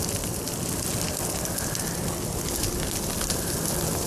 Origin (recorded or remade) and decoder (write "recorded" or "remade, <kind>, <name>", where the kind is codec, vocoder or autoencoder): recorded